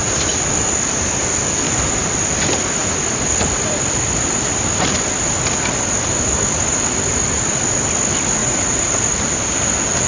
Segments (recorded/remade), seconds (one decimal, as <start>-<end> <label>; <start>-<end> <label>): 0.0-8.4 recorded; 8.4-8.9 remade; 8.9-10.1 recorded